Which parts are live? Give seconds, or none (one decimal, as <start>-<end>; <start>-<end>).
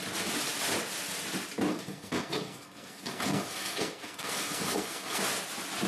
0.0-1.7; 5.2-5.9